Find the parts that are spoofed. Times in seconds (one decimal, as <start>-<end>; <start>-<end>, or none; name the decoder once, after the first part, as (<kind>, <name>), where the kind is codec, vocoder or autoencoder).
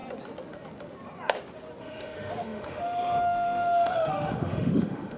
1.8-5.2 (autoencoder, DAC-VAE)